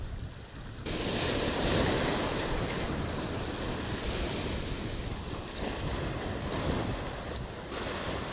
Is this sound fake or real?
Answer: real